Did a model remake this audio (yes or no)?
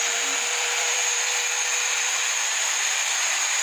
yes